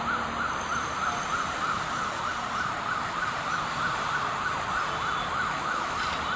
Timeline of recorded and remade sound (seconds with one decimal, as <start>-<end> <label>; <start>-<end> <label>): 0.0-5.2 recorded; 5.2-6.0 remade; 6.0-6.4 recorded